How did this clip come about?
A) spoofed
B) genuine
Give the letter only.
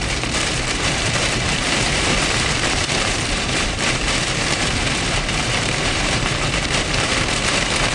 A